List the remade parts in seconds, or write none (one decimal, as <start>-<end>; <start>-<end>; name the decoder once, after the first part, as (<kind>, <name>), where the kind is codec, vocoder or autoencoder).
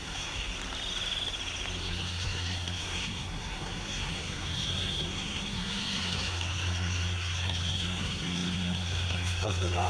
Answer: 0.0-0.5 (codec, SNAC); 1.8-9.9